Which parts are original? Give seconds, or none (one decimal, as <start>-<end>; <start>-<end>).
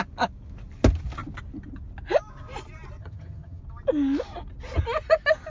0.0-3.0; 3.6-5.5